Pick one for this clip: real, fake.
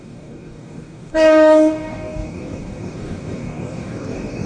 fake